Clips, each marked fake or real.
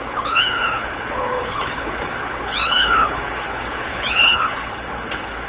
fake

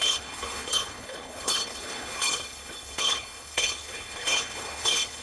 fake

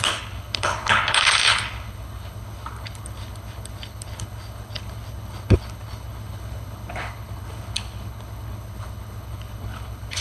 fake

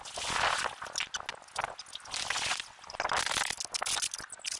real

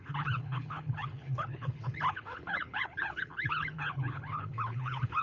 fake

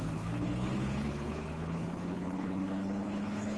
fake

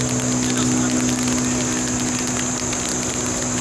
real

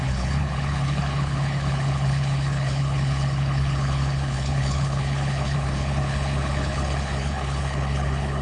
fake